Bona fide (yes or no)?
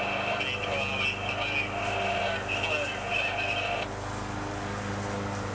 yes